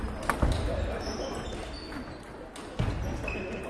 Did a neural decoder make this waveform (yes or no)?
no